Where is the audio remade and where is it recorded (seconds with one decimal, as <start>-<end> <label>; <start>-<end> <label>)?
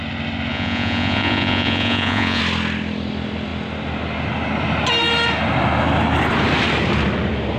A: 0.0-0.5 recorded; 0.5-2.4 remade; 2.4-7.6 recorded